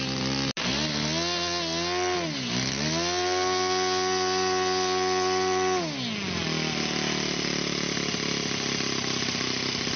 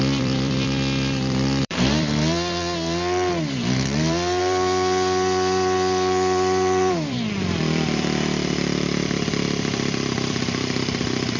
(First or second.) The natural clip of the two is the first